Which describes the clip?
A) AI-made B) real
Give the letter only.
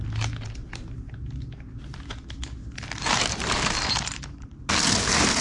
B